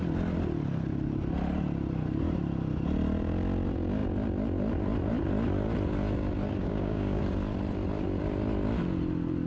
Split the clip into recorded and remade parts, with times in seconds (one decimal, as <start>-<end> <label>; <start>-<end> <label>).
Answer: 0.0-6.6 recorded; 6.6-7.2 remade; 7.2-9.5 recorded